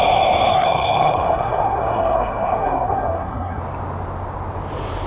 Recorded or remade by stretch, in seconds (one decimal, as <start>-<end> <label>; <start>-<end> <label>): 0.0-0.5 recorded; 0.5-3.6 remade; 3.6-5.1 recorded